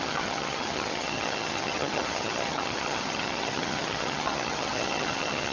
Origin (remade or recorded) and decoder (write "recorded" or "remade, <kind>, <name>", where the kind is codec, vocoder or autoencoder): remade, vocoder, HiFi-GAN